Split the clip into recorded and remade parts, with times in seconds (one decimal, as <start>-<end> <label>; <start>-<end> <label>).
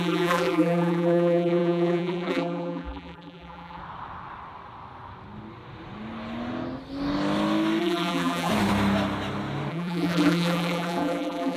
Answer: 0.0-3.8 remade; 3.8-7.8 recorded; 7.8-8.5 remade; 8.5-9.7 recorded; 9.7-11.6 remade